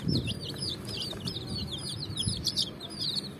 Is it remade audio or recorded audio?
remade